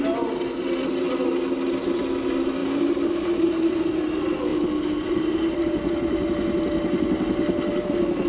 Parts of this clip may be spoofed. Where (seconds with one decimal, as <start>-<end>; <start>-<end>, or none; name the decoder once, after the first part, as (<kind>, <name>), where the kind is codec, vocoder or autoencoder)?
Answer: none